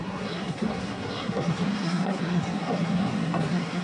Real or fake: fake